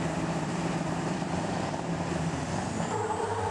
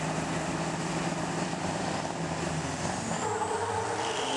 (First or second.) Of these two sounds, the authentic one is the second